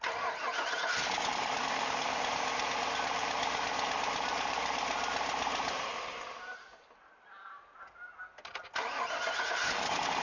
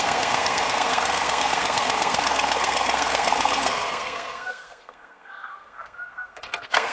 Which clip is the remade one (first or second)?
second